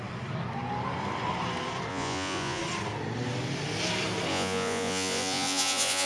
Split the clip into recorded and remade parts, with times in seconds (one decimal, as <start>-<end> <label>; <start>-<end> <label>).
0.0-1.9 recorded; 1.9-2.6 remade; 2.6-4.3 recorded; 4.3-6.1 remade